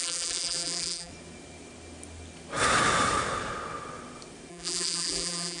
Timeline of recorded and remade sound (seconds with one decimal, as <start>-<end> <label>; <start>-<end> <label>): 0.0-1.1 remade; 1.1-4.5 recorded; 4.5-5.6 remade